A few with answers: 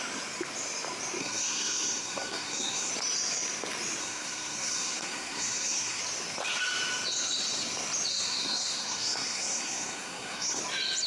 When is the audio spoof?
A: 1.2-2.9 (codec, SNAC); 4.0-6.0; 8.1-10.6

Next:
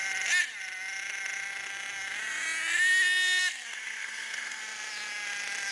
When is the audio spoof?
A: 3.4-4.6 (codec, SNAC)

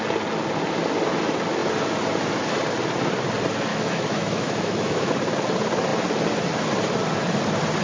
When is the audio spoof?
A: 3.7-5.1 (autoencoder, DAC-VAE)

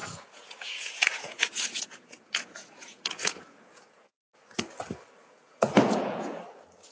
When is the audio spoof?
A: 0.0-4.1 (vocoder, Vocos); 5.2-6.4

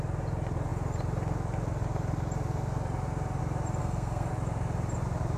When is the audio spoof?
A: 3.8-4.3 (codec, SNAC)